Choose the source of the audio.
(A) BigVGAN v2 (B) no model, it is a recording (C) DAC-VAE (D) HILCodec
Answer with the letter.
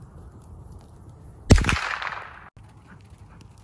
B